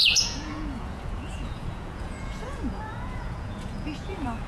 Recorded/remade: remade